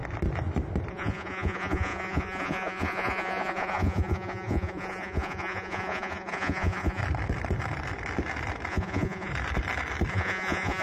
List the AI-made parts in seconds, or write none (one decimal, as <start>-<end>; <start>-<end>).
0.9-7.0; 8.7-9.3; 10.1-10.8